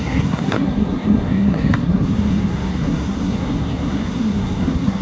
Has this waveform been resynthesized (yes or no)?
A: yes